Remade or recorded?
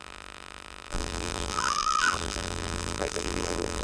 remade